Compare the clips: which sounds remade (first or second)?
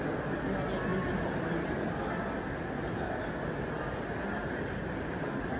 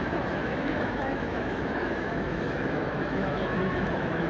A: second